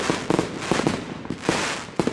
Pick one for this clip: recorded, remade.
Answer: recorded